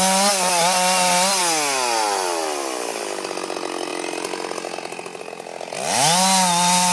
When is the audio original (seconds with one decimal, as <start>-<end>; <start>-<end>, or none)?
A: 0.0-6.9